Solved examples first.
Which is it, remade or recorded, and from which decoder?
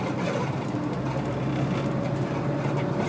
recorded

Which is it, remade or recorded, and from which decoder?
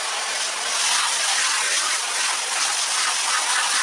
recorded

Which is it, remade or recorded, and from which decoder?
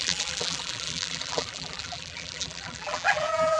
remade, vocoder, BigVGAN v2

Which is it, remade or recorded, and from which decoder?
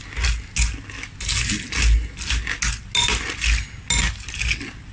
recorded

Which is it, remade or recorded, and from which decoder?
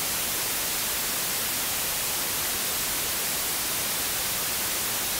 recorded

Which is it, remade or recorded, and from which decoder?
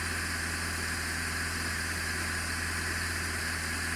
recorded